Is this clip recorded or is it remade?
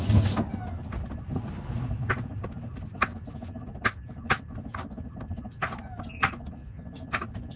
recorded